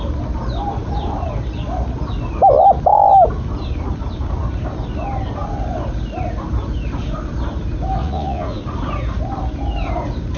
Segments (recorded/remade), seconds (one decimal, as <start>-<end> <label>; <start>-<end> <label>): 0.0-8.0 recorded; 8.0-8.6 remade; 8.6-10.4 recorded

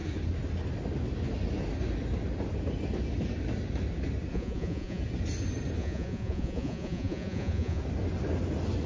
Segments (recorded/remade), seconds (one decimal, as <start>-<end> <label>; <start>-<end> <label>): 0.0-4.3 recorded; 4.3-5.0 remade; 5.0-5.8 recorded; 5.8-7.8 remade; 7.8-8.9 recorded

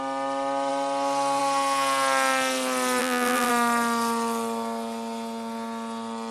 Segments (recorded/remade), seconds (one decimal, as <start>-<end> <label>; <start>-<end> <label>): 0.0-3.0 recorded; 3.0-3.5 remade; 3.5-6.3 recorded

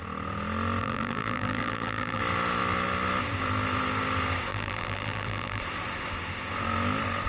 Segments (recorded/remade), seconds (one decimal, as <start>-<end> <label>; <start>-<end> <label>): 0.0-0.8 recorded; 0.8-2.2 remade; 2.2-4.5 recorded; 4.5-5.6 remade; 5.6-7.3 recorded

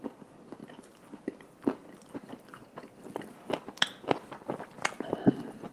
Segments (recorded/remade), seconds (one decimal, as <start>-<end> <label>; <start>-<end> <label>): 0.0-5.7 recorded

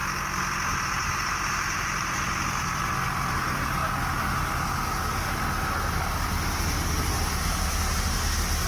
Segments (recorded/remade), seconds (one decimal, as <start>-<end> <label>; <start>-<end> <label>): 0.0-0.8 recorded; 0.8-3.8 remade; 3.8-7.0 recorded; 7.0-8.7 remade

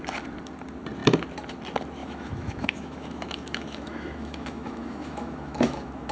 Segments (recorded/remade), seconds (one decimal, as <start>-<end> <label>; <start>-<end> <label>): 0.0-2.0 recorded; 2.0-6.1 remade